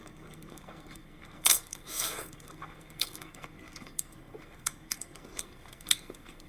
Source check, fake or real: fake